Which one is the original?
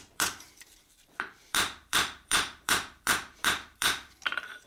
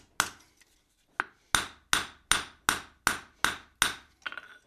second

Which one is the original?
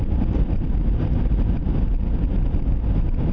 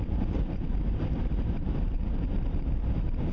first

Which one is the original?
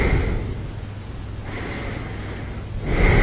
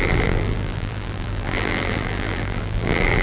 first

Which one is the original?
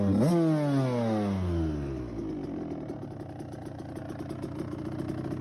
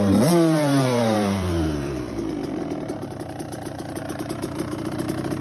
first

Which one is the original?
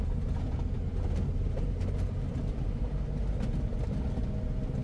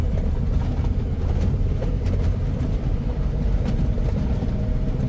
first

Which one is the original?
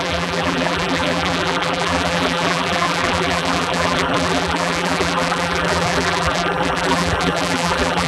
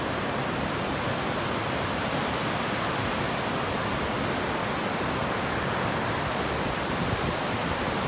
second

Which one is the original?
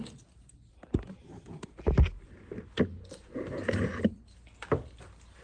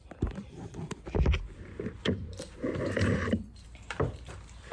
first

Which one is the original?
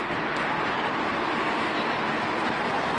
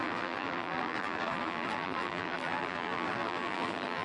first